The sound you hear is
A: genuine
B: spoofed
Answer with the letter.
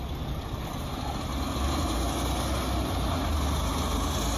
A